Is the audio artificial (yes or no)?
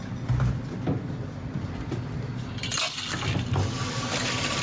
no